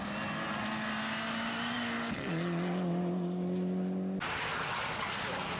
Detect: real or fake real